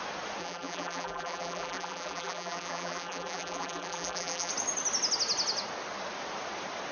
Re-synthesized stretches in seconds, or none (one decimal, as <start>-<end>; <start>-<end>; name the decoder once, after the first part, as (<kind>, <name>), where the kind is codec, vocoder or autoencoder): 0.4-4.5 (vocoder, BigVGAN v2)